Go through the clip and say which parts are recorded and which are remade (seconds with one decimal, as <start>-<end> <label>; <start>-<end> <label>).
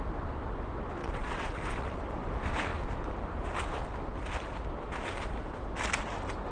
0.0-1.0 recorded; 1.0-2.0 remade; 2.0-6.5 recorded